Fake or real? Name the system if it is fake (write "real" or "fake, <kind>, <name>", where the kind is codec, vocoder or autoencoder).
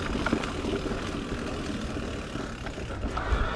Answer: real